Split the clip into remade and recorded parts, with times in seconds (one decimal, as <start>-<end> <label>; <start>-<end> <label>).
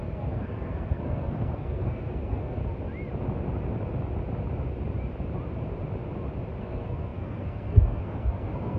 0.0-2.6 remade; 2.6-6.6 recorded; 6.6-8.8 remade